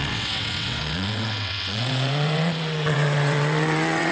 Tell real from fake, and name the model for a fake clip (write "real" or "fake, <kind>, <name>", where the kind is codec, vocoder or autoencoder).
fake, vocoder, WaveNeXt